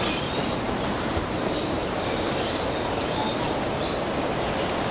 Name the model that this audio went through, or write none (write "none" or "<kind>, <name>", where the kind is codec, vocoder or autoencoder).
vocoder, BigVGAN v2